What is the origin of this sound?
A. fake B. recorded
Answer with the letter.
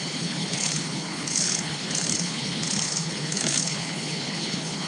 A